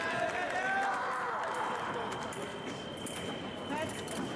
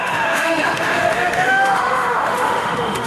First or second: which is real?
first